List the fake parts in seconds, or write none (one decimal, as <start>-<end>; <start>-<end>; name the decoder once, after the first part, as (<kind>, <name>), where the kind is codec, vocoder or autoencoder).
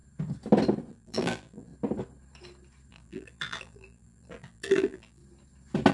0.9-1.7 (vocoder, BigVGAN v2); 2.9-5.2